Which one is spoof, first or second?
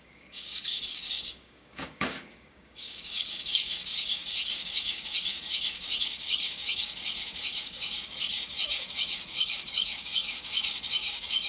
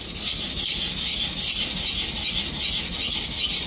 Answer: first